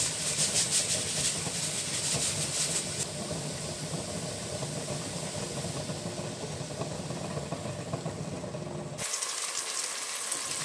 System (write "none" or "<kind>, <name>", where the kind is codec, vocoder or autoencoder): none